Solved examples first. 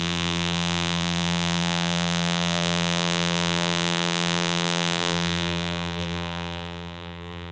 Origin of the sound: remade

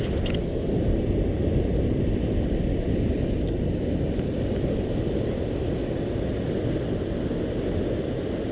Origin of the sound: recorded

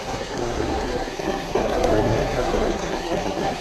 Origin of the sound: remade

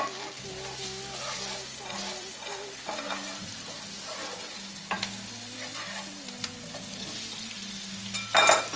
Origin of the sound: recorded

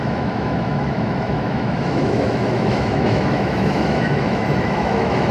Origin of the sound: remade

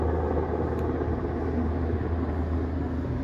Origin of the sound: recorded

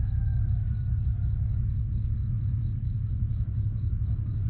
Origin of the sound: remade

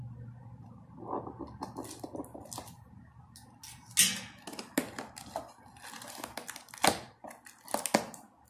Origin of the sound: recorded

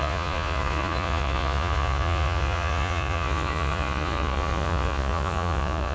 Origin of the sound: remade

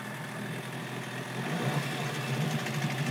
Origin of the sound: recorded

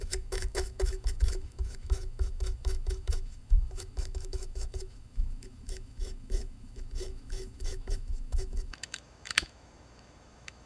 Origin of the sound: remade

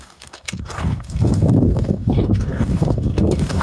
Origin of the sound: remade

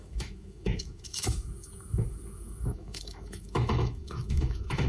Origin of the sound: remade